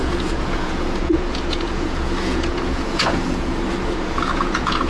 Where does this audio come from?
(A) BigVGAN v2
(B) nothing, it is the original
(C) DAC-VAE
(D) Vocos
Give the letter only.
D